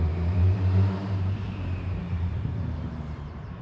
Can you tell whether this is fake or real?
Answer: fake